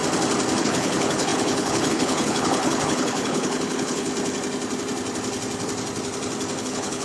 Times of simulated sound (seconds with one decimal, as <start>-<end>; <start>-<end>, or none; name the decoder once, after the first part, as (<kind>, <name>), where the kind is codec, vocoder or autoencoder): 0.6-4.1 (codec, HILCodec); 6.6-7.0